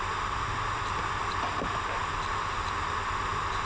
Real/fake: real